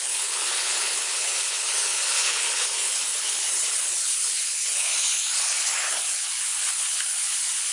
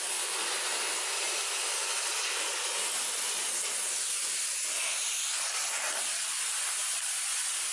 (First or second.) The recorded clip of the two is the second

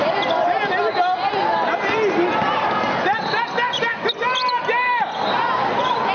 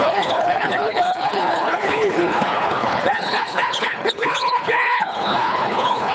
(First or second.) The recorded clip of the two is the first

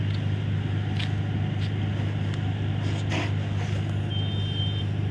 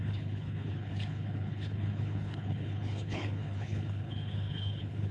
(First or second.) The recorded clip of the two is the first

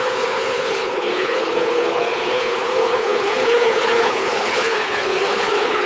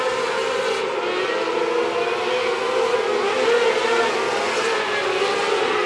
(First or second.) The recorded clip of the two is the second